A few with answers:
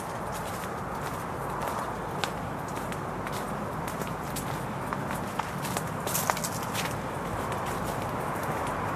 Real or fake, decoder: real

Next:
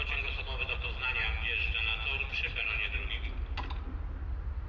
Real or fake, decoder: real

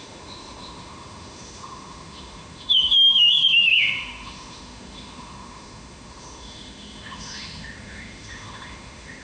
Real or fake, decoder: fake, autoencoder, DAC-VAE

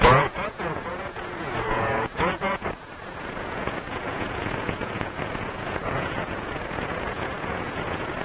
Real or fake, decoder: fake, vocoder, Vocos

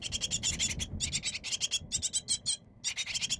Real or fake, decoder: real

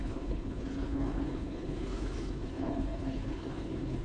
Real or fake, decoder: fake, codec, HILCodec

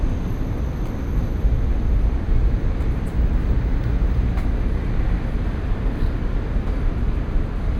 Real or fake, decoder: fake, vocoder, BigVGAN v2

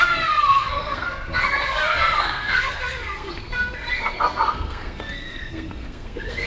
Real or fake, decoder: fake, codec, SNAC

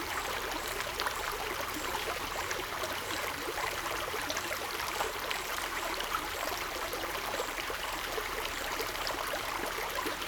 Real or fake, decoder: fake, vocoder, BigVGAN v2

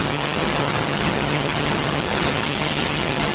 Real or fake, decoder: fake, vocoder, HiFi-GAN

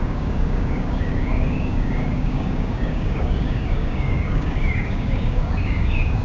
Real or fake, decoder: fake, codec, DAC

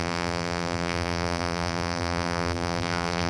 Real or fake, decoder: fake, vocoder, BigVGAN v2